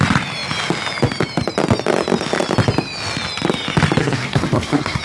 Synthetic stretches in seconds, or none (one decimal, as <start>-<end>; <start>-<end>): 4.0-5.0